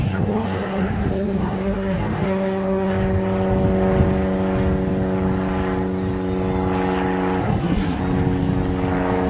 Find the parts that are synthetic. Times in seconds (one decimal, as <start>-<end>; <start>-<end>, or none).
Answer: 0.0-2.9; 7.4-8.0

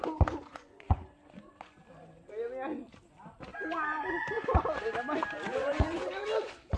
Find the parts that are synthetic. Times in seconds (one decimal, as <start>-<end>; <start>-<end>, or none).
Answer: 0.5-1.8; 5.6-6.2

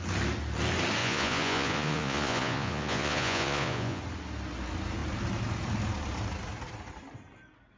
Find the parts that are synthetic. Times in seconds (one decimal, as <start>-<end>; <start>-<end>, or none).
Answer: 1.0-4.0

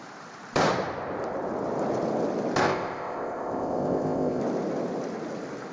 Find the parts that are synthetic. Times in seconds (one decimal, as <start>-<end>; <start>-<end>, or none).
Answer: 2.6-4.4

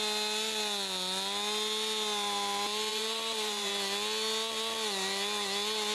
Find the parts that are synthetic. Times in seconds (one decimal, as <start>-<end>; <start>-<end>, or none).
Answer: 2.9-3.7

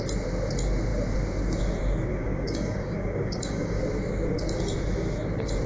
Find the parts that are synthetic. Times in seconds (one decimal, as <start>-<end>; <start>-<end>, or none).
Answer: 2.1-3.8

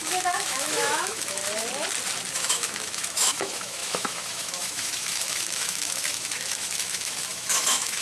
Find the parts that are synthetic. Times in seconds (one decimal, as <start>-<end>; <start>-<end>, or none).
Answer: 0.0-1.4; 2.3-8.0

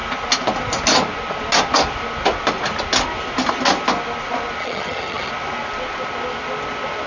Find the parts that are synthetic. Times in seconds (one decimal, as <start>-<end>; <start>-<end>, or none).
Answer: 4.6-5.3